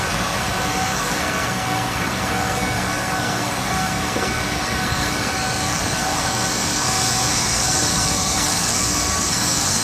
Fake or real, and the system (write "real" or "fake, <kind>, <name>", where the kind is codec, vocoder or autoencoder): fake, codec, SNAC